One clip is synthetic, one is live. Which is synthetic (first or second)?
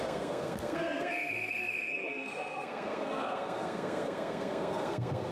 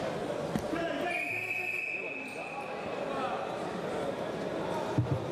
first